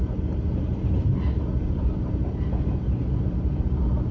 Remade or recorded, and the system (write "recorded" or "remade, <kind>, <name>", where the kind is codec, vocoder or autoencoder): recorded